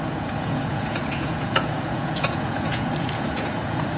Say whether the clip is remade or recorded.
remade